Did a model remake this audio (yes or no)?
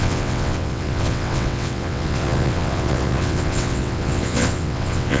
yes